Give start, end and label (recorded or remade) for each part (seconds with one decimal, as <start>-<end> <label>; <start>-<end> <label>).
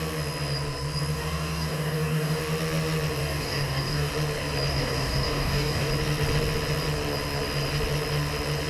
0.0-1.1 recorded; 1.1-2.4 remade; 2.4-3.2 recorded; 3.2-4.1 remade; 4.1-4.7 recorded; 4.7-5.9 remade; 5.9-8.7 recorded